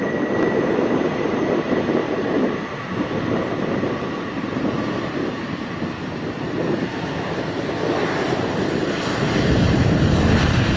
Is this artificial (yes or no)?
yes